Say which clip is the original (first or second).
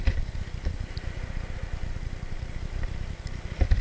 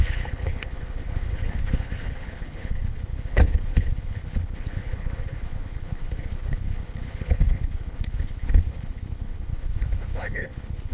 first